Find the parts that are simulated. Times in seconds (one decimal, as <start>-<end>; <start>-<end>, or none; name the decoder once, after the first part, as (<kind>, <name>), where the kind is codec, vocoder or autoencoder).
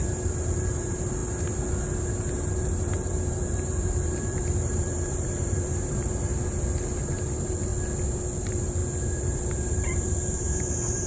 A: 0.0-1.2 (vocoder, BigVGAN v2); 2.5-6.3; 7.0-7.7; 8.4-8.8; 9.7-11.1